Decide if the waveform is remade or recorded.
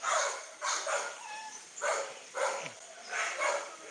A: remade